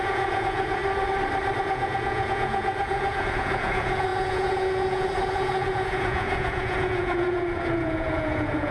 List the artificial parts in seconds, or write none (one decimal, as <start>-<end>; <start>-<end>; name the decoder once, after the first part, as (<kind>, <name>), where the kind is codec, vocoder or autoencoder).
0.0-0.8 (vocoder, Vocos); 1.6-8.7